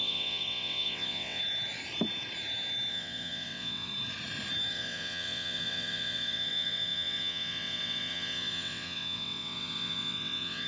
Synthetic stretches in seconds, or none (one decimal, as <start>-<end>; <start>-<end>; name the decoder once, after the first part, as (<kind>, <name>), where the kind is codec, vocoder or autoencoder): 0.0-1.4 (vocoder, WaveNeXt); 2.9-3.9; 4.7-10.7